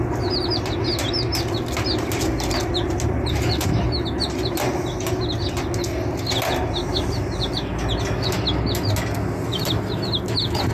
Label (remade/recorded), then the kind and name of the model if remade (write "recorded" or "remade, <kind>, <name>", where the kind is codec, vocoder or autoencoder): recorded